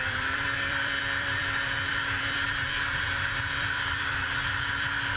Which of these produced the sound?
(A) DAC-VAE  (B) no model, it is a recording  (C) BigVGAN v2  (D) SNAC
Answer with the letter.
C